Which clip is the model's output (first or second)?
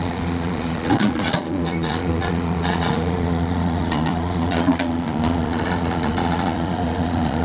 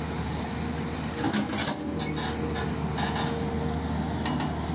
first